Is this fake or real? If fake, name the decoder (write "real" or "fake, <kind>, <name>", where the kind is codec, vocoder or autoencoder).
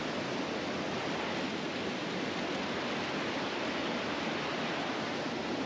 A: real